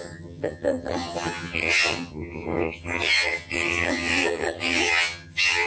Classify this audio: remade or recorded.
remade